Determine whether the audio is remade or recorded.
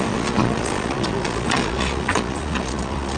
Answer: remade